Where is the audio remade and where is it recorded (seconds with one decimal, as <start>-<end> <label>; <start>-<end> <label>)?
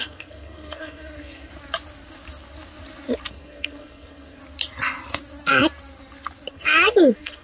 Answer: 0.0-1.5 remade; 1.5-3.3 recorded; 3.3-4.4 remade; 4.4-6.5 recorded; 6.5-7.4 remade